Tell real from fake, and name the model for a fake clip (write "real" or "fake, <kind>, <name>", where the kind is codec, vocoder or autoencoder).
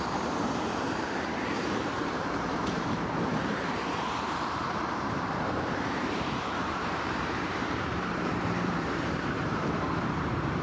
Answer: fake, vocoder, BigVGAN v2